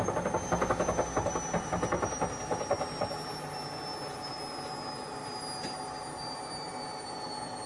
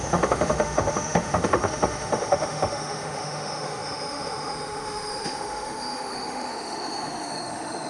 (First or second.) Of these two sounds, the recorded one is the first